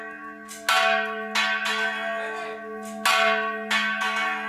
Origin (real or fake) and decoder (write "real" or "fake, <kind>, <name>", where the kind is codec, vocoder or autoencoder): real